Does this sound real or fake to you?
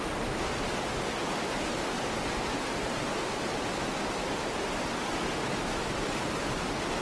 real